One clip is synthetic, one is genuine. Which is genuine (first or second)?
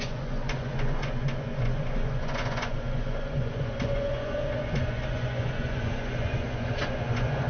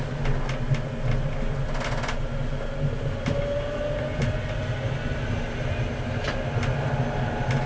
second